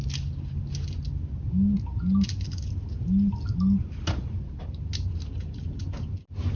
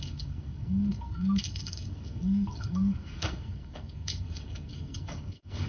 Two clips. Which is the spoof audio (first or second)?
second